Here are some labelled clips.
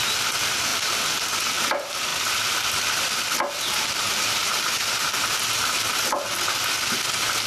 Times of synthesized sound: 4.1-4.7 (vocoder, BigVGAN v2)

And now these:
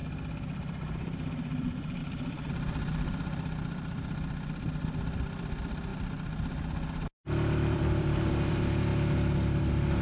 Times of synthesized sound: 0.0-5.9 (vocoder, BigVGAN v2); 7.2-8.9

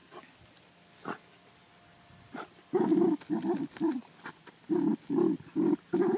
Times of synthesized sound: none

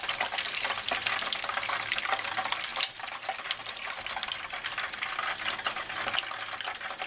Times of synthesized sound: 2.7-4.0 (vocoder, BigVGAN v2)

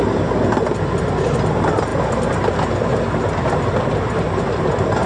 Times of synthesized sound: none

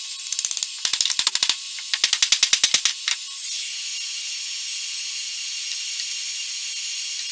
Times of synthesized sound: none

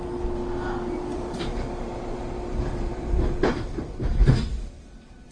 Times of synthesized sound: 1.1-4.3 (vocoder, BigVGAN v2)